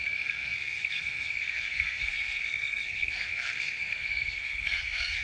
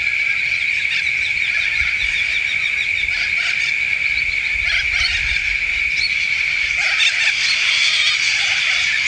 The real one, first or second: second